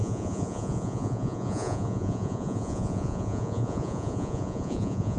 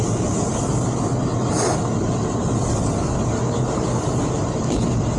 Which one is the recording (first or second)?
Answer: second